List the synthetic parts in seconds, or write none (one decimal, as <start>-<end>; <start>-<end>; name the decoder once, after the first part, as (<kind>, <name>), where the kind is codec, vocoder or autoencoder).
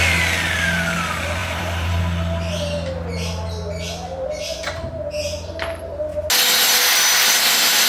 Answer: 1.4-2.0 (vocoder, BigVGAN v2)